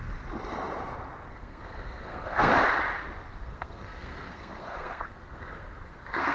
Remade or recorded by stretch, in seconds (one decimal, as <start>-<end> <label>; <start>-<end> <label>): 0.0-1.3 recorded; 1.3-2.5 remade; 2.5-3.4 recorded; 3.4-6.3 remade